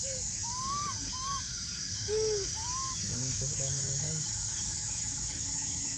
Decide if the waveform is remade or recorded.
remade